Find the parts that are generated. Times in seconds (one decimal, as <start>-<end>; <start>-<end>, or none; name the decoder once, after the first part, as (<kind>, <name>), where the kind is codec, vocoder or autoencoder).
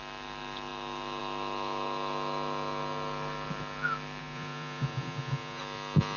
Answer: 4.2-5.6 (vocoder, Vocos)